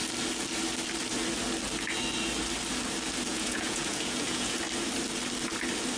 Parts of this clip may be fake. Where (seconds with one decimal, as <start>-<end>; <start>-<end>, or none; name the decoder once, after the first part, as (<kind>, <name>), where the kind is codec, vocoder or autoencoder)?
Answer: 3.3-4.6 (vocoder, Vocos)